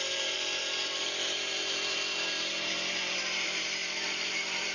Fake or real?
fake